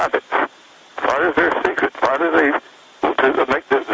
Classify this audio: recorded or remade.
recorded